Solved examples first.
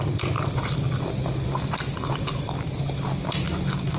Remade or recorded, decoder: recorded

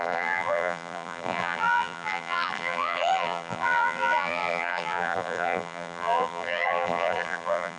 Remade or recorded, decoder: remade, vocoder, BigVGAN v2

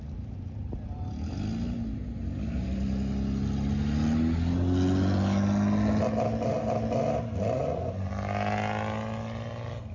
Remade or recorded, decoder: recorded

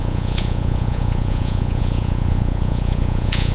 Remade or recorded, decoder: remade, vocoder, Vocos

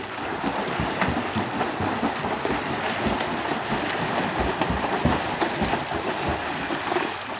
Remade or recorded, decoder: recorded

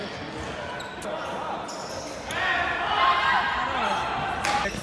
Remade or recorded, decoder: recorded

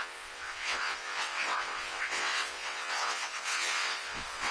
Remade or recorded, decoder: remade, vocoder, WaveNeXt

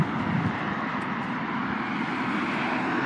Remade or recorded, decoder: recorded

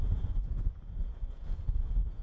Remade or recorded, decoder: remade, vocoder, Vocos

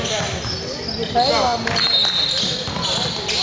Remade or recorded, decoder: recorded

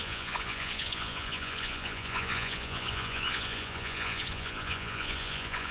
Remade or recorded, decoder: remade, vocoder, Vocos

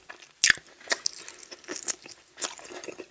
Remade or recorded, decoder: recorded